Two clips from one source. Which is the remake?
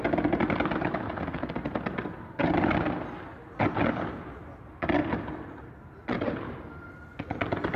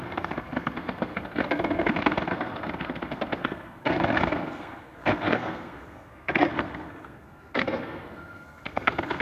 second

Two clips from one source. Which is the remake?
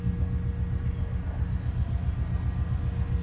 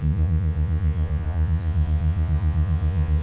second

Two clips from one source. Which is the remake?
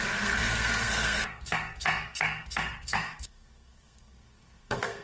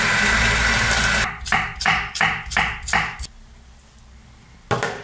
first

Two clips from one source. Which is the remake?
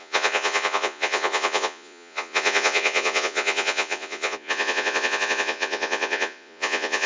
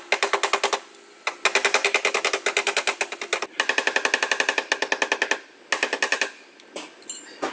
first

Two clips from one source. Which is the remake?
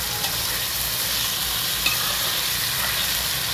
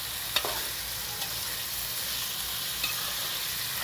first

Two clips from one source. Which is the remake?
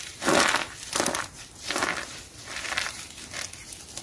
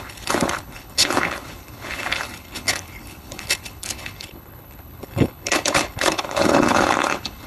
second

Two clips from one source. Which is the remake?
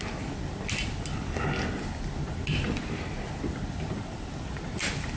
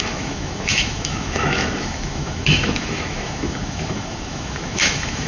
second